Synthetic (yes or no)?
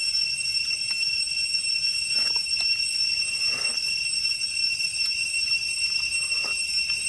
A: no